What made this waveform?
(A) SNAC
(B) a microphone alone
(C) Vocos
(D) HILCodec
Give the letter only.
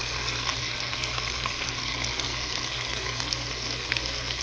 A